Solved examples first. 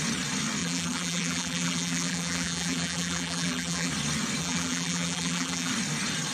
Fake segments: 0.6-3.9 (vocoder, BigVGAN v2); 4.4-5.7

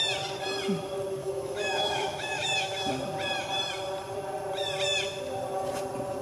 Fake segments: 1.2-2.9 (autoencoder, DAC-VAE)

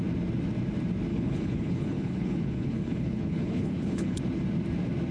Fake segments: 1.1-4.2 (codec, HILCodec)

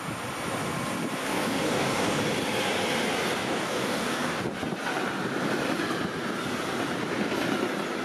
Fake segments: 1.2-2.2 (codec, DAC); 3.4-4.4

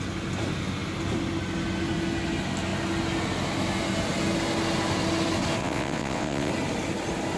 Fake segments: 5.6-6.5 (vocoder, WaveNeXt)

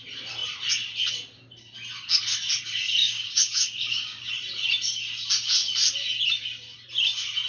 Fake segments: 3.0-4.3 (codec, DAC)